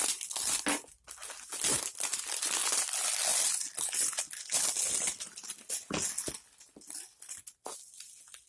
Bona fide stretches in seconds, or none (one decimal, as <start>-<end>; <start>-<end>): 0.0-8.5